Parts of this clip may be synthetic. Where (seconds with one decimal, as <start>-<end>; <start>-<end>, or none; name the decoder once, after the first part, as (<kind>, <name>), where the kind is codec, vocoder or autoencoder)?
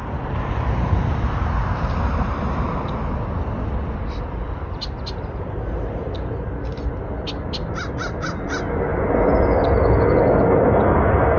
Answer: none